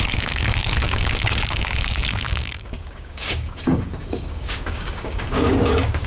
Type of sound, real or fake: fake